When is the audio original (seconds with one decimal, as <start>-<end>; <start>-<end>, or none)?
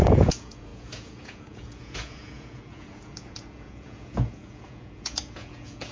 none